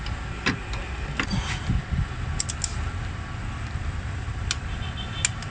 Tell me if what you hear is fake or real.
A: real